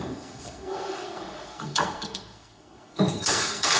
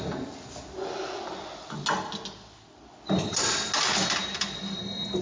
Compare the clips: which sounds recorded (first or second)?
second